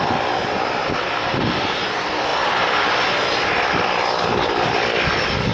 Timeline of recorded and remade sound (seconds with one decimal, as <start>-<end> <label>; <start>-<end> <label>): 0.0-5.5 recorded